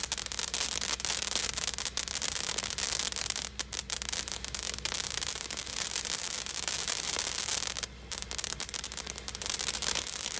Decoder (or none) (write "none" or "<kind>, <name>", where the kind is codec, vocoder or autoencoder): none